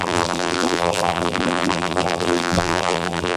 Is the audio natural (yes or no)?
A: no